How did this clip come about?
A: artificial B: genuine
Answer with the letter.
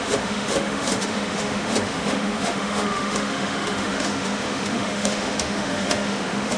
A